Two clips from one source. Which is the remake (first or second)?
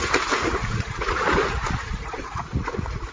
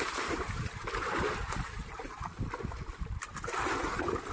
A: first